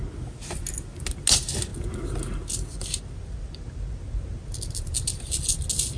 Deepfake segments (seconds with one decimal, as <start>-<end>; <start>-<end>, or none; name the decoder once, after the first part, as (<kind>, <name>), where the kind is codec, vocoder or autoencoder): none

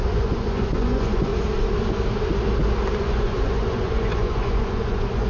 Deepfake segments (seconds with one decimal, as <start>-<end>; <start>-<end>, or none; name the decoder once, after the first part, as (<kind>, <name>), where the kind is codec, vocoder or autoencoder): 0.0-1.3 (vocoder, Vocos); 3.0-5.3

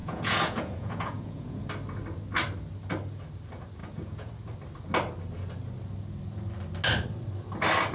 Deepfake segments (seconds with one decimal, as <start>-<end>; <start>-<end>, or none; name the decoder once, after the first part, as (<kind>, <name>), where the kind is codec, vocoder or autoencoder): 0.0-1.6 (vocoder, Vocos); 3.8-4.3

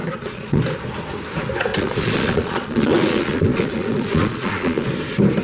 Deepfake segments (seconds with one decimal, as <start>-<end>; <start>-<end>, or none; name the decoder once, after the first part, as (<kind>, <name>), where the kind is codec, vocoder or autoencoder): 0.0-0.6 (vocoder, Vocos); 1.7-4.9

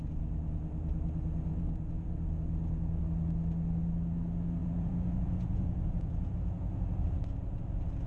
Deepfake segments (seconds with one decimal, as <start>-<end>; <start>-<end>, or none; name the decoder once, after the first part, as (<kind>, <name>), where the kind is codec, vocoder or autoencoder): 1.5-3.0 (vocoder, Vocos); 4.6-6.3